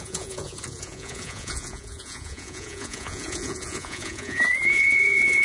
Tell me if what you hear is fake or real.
fake